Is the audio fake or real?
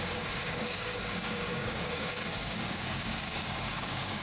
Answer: fake